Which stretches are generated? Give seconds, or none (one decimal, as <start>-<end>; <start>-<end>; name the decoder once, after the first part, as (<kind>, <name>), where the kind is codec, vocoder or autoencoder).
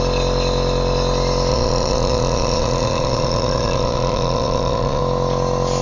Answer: 1.5-5.0 (vocoder, Vocos)